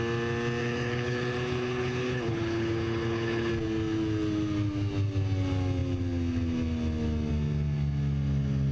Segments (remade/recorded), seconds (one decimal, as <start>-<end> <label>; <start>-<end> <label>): 0.0-0.6 recorded; 0.6-3.5 remade; 3.5-8.7 recorded